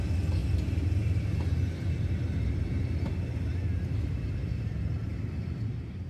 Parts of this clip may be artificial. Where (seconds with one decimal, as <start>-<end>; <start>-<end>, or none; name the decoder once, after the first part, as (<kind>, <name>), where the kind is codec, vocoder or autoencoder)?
none